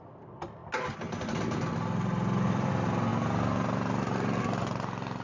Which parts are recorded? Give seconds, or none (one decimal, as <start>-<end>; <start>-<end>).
0.0-5.2